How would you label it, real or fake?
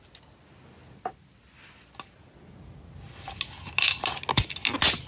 real